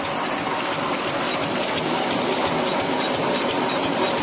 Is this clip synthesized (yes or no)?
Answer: yes